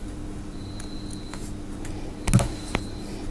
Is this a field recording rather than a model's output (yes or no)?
yes